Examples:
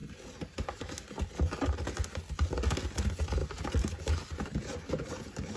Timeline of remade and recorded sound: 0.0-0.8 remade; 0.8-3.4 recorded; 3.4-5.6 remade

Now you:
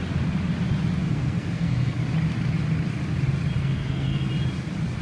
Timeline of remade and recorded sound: 0.0-1.0 recorded; 1.0-2.0 remade; 2.0-3.6 recorded; 3.6-4.3 remade; 4.3-5.0 recorded

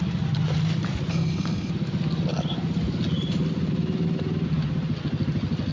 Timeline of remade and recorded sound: 0.0-1.1 recorded; 1.1-1.7 remade; 1.7-5.7 recorded

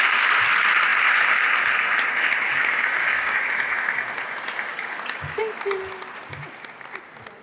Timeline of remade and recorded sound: 0.0-2.6 recorded; 2.6-3.4 remade; 3.4-4.7 recorded; 4.7-5.4 remade; 5.4-7.4 recorded